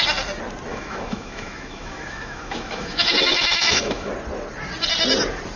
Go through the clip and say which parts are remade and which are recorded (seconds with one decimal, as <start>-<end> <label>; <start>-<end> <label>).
0.0-0.7 recorded; 0.7-4.1 remade; 4.1-5.6 recorded